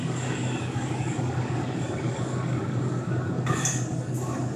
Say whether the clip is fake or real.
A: fake